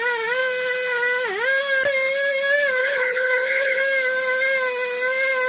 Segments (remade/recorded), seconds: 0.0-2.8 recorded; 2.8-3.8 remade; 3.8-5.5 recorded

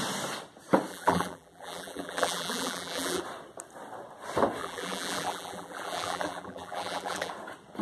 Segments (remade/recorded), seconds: 0.0-0.9 recorded; 0.9-3.2 remade; 3.2-4.6 recorded; 4.6-7.3 remade; 7.3-7.8 recorded

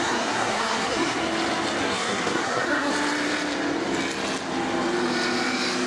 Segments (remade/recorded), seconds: 0.0-1.2 remade; 1.2-1.8 recorded; 1.8-2.9 remade; 2.9-5.9 recorded

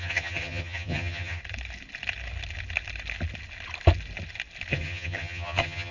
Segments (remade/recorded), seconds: 0.0-1.4 remade; 1.4-4.7 recorded; 4.7-5.9 remade

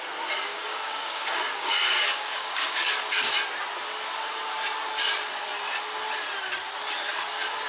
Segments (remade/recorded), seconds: 0.0-0.5 recorded; 0.5-3.0 remade; 3.0-7.7 recorded

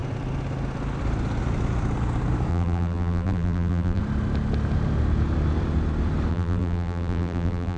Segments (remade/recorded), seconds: 0.0-2.5 recorded; 2.5-4.0 remade; 4.0-6.3 recorded; 6.3-7.8 remade